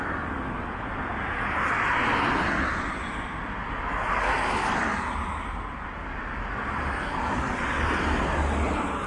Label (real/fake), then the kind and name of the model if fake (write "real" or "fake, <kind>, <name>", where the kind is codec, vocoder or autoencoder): real